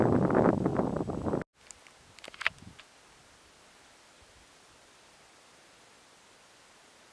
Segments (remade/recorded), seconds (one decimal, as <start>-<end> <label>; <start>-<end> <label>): 0.0-7.1 recorded